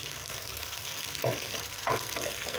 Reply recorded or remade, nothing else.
remade